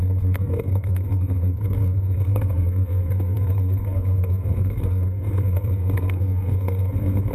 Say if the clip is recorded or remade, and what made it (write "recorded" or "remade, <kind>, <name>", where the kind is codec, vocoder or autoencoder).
remade, codec, SNAC